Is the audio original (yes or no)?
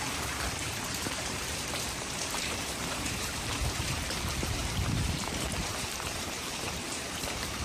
no